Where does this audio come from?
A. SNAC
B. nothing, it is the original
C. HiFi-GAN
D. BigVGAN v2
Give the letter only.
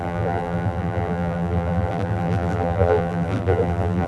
D